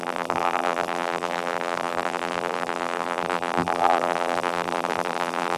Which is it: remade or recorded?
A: remade